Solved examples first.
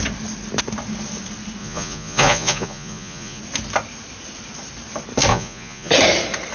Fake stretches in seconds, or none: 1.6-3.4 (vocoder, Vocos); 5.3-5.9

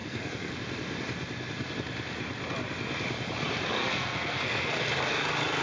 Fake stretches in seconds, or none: 0.0-0.5 (codec, SNAC); 3.8-4.8

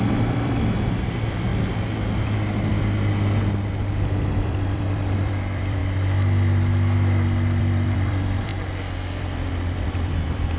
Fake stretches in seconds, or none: 0.0-1.5 (vocoder, BigVGAN v2); 4.2-5.8; 7.6-8.5; 9.2-10.6

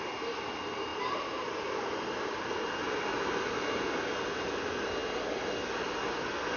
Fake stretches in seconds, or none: none

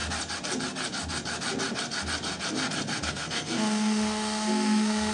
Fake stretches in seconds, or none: 3.1-5.1 (codec, SNAC)